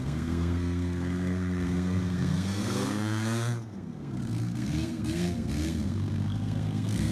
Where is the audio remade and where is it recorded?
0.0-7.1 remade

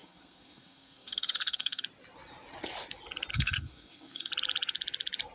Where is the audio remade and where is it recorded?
0.0-1.8 remade; 1.8-3.3 recorded; 3.3-4.3 remade; 4.3-5.3 recorded